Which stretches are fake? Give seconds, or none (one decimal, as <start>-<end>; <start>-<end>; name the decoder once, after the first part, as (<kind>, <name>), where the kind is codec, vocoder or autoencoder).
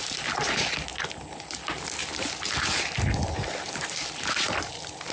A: 0.0-0.9 (vocoder, BigVGAN v2); 3.4-5.1